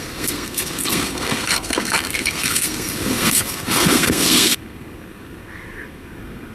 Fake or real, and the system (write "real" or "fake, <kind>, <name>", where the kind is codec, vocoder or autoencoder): fake, codec, SNAC